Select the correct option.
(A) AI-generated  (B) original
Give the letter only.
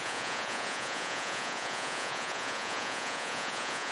A